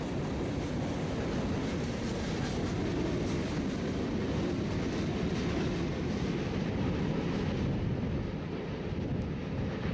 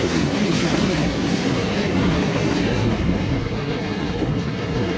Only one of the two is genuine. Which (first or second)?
first